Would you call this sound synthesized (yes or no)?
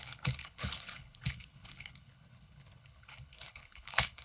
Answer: yes